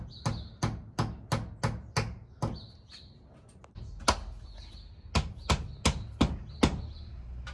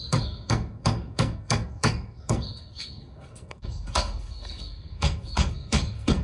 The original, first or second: first